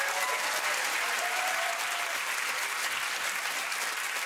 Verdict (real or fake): fake